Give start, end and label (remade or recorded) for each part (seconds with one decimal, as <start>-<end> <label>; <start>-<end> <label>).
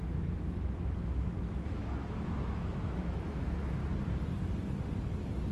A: 0.0-3.8 remade; 3.8-5.5 recorded